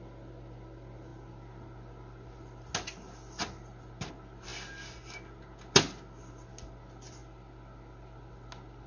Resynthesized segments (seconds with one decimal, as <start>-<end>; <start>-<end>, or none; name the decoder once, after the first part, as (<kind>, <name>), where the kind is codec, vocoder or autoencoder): none